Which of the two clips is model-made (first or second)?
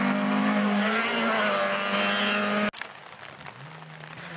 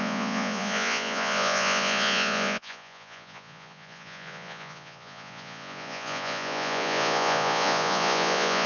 second